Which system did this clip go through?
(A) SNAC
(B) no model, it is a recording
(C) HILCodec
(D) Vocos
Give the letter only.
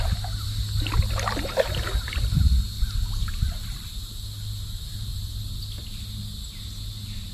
B